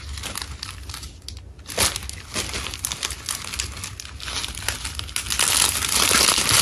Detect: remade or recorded recorded